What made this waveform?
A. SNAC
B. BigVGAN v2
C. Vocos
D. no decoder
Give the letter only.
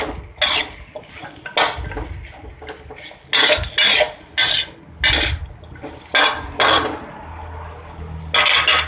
D